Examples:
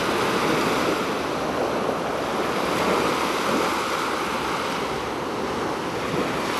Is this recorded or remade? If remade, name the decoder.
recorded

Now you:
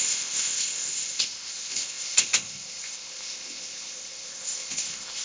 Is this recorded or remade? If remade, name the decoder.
remade, codec, ZipCodec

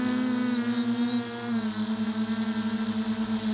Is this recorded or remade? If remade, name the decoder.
recorded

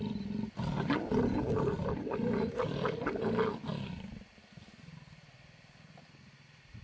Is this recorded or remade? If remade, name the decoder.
recorded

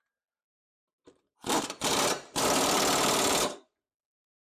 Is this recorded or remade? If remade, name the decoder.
remade, vocoder, BigVGAN v2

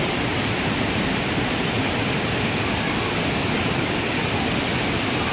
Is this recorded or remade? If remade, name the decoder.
remade, vocoder, BigVGAN v2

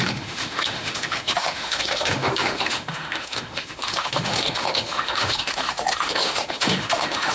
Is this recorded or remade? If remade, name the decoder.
remade, autoencoder, DAC-VAE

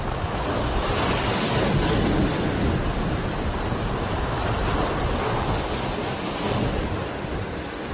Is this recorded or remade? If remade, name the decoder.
recorded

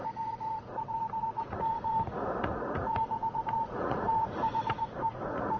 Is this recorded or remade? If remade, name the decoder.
remade, vocoder, Vocos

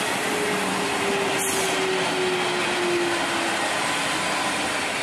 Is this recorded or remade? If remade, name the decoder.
recorded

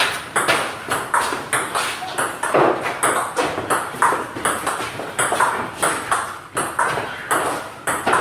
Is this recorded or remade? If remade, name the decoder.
recorded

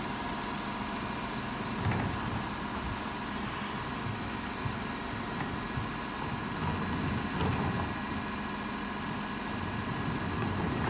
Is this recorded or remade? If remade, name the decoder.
recorded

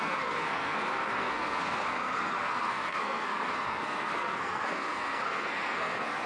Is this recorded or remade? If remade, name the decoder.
remade, codec, SNAC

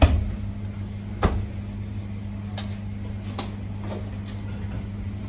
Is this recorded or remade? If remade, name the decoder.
recorded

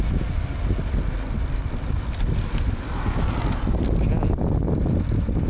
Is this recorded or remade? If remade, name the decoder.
recorded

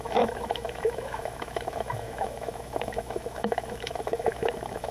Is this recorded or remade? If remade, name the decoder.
remade, autoencoder, DAC-VAE